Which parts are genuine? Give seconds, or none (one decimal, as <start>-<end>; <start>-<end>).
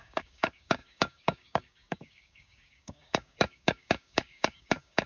none